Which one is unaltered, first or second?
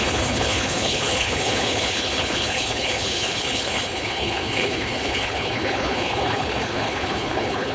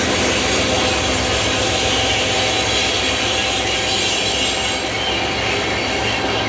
second